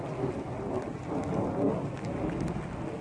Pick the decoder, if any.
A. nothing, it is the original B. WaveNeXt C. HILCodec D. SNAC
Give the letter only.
A